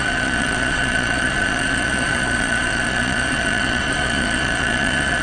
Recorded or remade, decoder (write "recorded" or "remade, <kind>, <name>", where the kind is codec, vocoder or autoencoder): remade, vocoder, Vocos